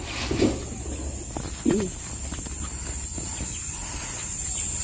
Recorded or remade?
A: recorded